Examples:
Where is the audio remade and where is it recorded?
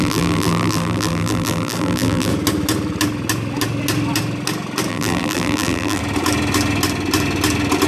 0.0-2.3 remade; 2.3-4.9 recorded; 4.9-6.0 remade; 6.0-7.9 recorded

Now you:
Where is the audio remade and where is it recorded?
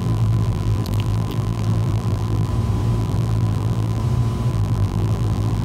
0.0-2.5 remade; 2.5-3.0 recorded; 3.0-4.0 remade; 4.0-4.5 recorded; 4.5-5.6 remade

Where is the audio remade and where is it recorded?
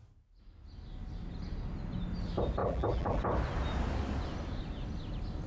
0.0-2.6 recorded; 2.6-3.2 remade; 3.2-5.5 recorded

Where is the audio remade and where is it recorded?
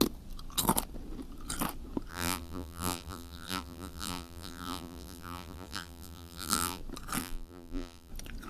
0.0-2.1 recorded; 2.1-6.8 remade; 6.8-7.2 recorded; 7.2-8.1 remade; 8.1-8.5 recorded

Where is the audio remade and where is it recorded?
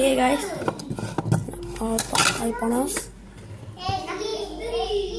0.0-1.4 recorded; 1.4-3.0 remade; 3.0-4.3 recorded; 4.3-5.2 remade